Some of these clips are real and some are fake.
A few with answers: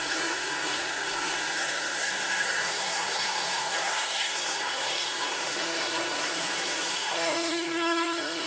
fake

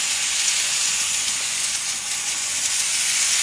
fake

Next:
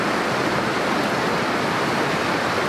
real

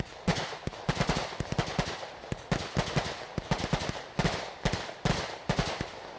real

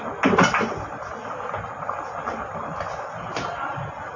real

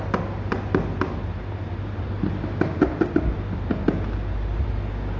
real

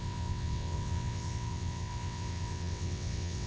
fake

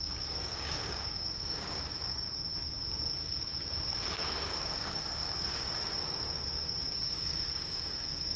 fake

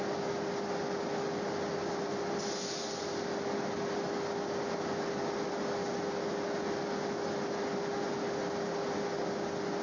real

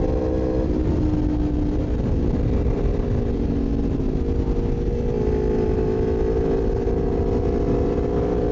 real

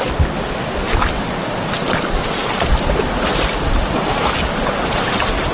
real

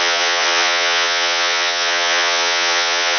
fake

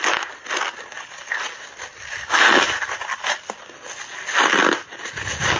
real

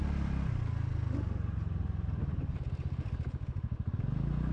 real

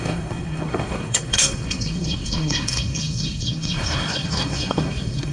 fake